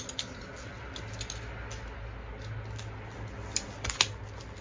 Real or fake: real